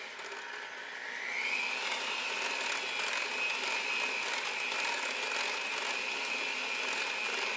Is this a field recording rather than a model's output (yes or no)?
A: yes